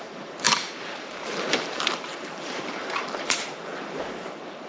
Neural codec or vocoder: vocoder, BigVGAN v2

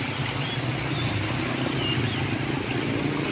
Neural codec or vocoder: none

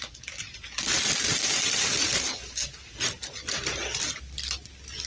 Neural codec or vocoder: none